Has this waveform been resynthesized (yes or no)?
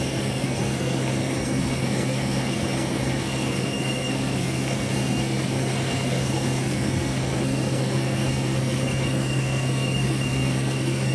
yes